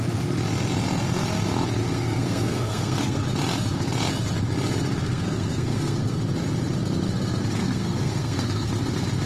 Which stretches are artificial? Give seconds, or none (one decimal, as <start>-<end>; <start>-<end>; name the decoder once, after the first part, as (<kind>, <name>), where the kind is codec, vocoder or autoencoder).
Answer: 1.8-3.2 (codec, SNAC); 5.0-6.2; 7.6-8.7